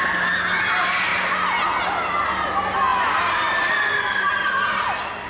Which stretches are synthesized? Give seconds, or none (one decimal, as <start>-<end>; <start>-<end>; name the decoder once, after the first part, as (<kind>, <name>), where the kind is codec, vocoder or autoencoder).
none